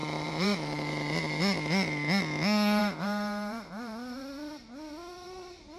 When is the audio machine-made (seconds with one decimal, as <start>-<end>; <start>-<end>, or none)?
0.0-1.4; 2.8-4.2